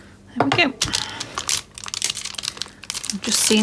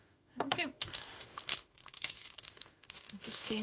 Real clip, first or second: first